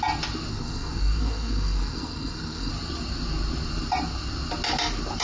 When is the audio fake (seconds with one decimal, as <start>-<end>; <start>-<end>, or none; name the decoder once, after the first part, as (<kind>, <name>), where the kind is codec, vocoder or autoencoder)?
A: 0.5-2.7 (codec, SNAC)

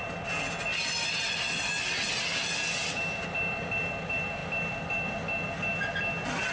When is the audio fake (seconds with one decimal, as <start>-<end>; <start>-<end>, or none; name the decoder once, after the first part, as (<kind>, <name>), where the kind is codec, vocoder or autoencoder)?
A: none

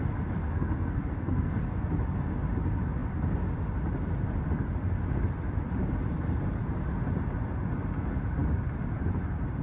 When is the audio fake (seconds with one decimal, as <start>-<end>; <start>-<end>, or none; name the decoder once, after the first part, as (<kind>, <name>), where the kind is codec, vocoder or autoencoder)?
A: 0.4-1.6 (codec, SNAC)